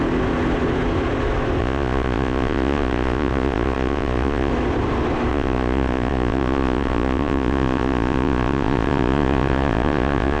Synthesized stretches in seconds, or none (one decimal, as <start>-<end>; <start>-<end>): 1.6-4.5; 5.3-10.4